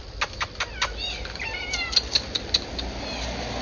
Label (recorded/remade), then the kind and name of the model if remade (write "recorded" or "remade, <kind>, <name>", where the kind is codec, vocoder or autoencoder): recorded